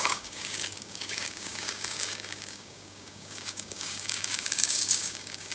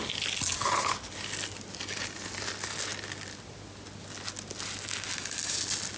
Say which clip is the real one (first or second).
second